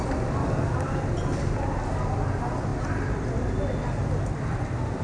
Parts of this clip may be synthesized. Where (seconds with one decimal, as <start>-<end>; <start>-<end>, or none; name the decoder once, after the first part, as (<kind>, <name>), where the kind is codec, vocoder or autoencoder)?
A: 0.4-1.0 (codec, DAC)